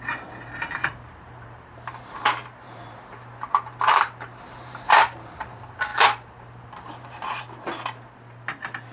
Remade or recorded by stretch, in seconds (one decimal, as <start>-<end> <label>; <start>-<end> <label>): 0.0-0.8 recorded; 0.8-5.4 remade; 5.4-5.9 recorded; 5.9-7.4 remade; 7.4-8.9 recorded